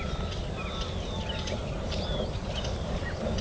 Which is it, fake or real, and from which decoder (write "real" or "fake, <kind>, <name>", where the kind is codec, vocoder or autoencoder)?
real